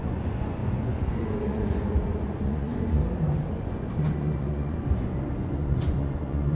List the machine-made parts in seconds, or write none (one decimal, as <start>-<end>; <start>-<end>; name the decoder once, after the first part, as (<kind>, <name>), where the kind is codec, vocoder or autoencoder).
0.0-3.0 (vocoder, Vocos); 3.5-6.5